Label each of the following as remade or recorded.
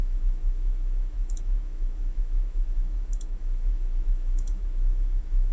remade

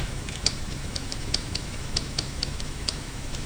remade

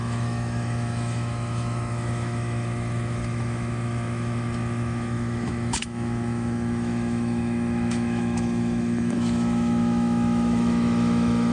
remade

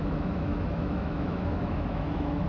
remade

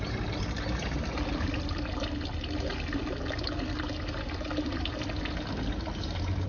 recorded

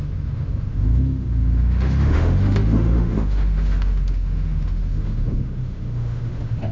remade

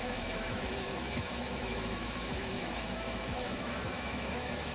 remade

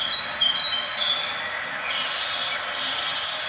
recorded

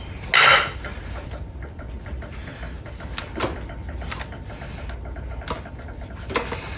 recorded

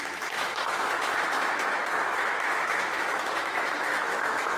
remade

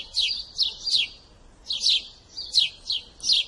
recorded